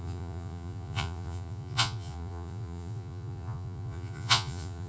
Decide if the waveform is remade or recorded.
remade